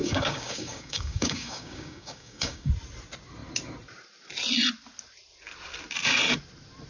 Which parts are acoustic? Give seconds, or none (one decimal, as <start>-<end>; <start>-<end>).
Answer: 2.7-6.9